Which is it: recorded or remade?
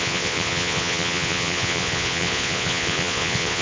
remade